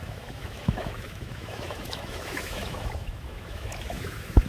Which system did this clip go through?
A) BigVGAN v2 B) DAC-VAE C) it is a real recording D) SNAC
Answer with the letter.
B